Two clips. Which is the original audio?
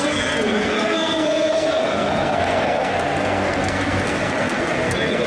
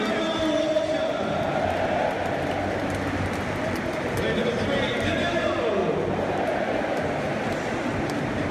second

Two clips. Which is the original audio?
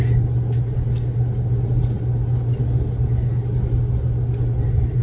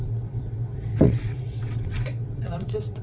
first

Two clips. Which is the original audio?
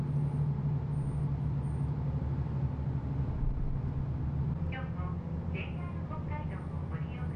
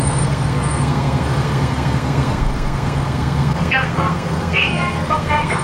first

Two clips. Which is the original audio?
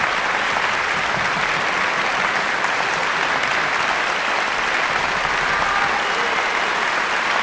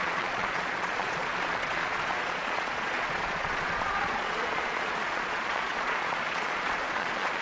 first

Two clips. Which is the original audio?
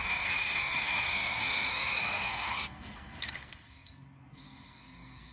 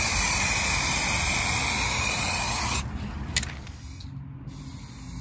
second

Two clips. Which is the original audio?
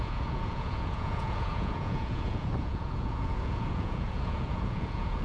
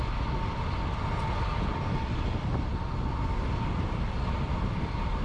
second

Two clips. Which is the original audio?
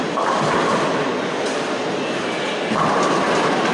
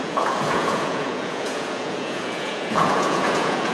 first